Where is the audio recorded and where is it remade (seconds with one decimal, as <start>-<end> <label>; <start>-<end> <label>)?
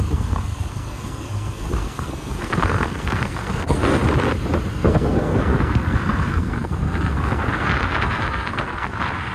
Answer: 0.0-4.0 remade; 4.0-4.7 recorded; 4.7-9.3 remade